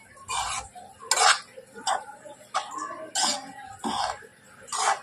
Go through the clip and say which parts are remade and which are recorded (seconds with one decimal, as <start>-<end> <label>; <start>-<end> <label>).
0.0-5.0 recorded